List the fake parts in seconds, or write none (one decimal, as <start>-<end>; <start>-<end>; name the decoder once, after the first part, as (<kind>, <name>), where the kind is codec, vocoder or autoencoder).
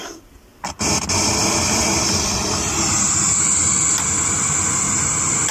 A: none